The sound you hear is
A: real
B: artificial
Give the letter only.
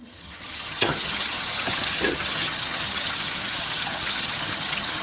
B